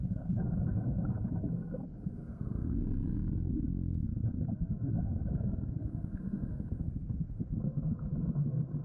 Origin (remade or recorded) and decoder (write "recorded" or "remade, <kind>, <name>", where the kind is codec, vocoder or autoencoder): remade, codec, SNAC